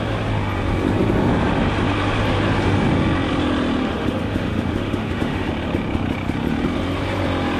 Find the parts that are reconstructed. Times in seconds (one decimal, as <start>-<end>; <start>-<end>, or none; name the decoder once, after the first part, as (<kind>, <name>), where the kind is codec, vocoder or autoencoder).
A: 3.8-5.5 (autoencoder, DAC-VAE)